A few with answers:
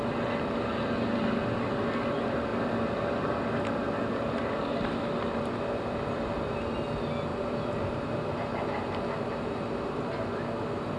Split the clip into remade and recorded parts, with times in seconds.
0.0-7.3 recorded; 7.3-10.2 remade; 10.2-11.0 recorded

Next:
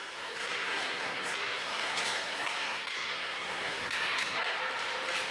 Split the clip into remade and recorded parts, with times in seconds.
0.0-4.6 remade; 4.6-5.3 recorded

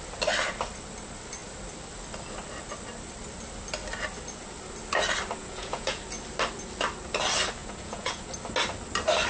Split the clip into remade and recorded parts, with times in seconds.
0.0-5.4 recorded; 5.4-6.0 remade; 6.0-7.6 recorded; 7.6-8.3 remade; 8.3-9.3 recorded

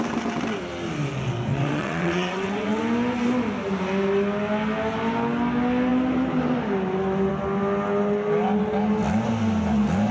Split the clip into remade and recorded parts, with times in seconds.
0.0-1.5 recorded; 1.5-2.8 remade; 2.8-10.1 recorded

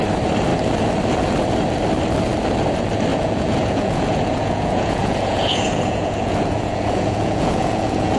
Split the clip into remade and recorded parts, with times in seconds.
0.0-3.1 recorded; 3.1-8.2 remade

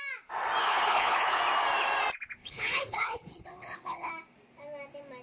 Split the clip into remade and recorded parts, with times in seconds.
0.0-0.6 recorded; 0.6-1.4 remade; 1.4-2.4 recorded; 2.4-4.1 remade; 4.1-5.2 recorded